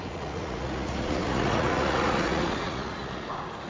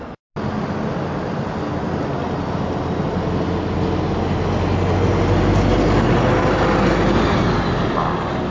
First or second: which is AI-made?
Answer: first